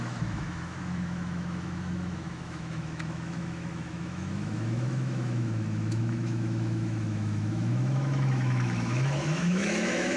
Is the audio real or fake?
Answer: fake